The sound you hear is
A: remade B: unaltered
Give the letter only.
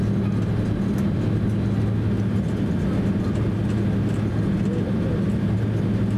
B